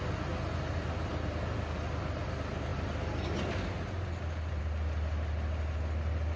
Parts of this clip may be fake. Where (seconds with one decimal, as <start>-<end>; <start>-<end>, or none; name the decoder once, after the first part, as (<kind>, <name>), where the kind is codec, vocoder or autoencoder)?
none